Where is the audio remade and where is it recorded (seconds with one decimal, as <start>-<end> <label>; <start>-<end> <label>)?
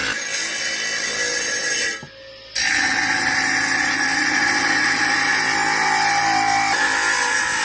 0.0-7.6 recorded